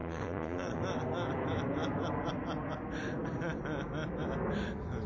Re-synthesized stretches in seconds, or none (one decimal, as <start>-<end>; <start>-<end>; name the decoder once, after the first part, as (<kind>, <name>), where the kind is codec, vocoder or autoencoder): 0.0-0.8 (vocoder, Vocos)